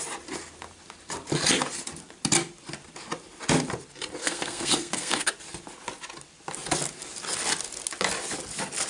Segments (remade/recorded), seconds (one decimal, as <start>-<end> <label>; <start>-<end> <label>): 0.0-4.2 recorded; 4.2-5.3 remade; 5.3-8.9 recorded